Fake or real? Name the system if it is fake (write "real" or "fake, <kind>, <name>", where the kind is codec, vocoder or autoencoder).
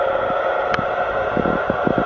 real